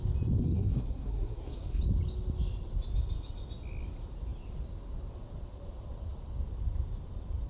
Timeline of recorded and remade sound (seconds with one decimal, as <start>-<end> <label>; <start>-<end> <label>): 0.0-0.4 recorded; 0.4-1.8 remade; 1.8-7.5 recorded